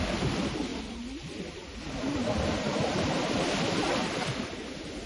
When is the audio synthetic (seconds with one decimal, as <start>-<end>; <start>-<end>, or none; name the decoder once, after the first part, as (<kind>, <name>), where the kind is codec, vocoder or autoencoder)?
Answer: none